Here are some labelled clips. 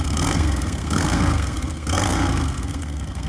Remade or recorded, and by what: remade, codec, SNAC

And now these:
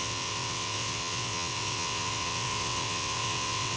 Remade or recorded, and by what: remade, vocoder, WaveNeXt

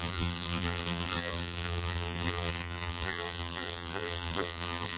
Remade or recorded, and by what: remade, vocoder, BigVGAN v2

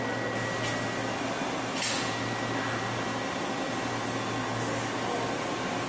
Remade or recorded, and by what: recorded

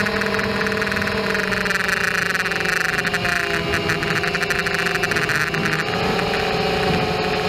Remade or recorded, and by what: recorded